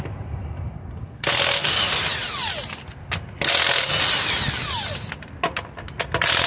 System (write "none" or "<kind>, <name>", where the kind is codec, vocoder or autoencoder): none